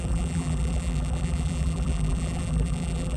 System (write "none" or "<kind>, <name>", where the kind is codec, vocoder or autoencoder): vocoder, BigVGAN v2